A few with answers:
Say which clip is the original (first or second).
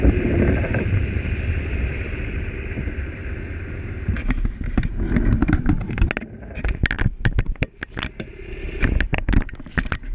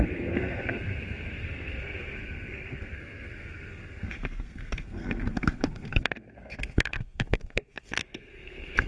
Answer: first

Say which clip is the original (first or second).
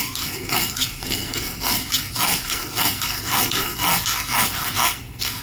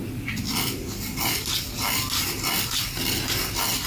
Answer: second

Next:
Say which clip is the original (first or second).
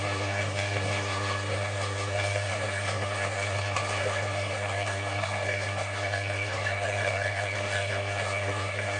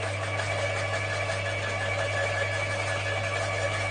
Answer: second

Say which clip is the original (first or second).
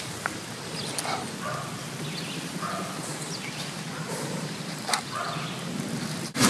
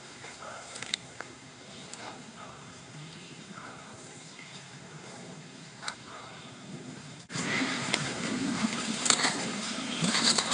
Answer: first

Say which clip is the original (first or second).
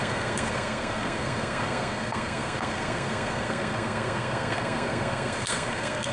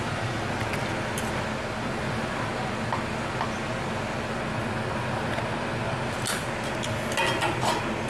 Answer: second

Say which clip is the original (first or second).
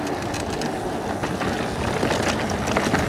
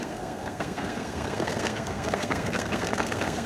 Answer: first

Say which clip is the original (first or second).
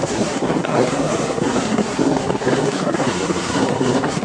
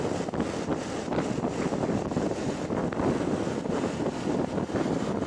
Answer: second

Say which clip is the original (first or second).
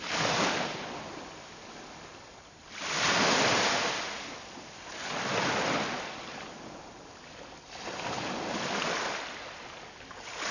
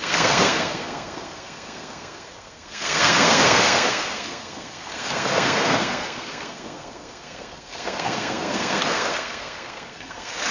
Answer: first